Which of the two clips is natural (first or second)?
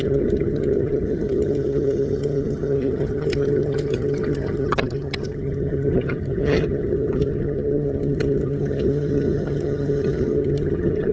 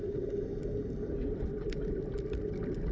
second